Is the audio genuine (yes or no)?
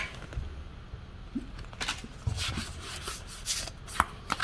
yes